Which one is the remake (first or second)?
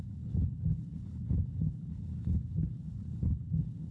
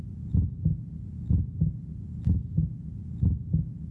first